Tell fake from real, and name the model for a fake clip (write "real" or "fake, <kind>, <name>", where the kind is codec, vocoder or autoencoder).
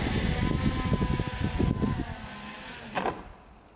real